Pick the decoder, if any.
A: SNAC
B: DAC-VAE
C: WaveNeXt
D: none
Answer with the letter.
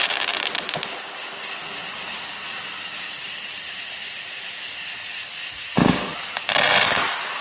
D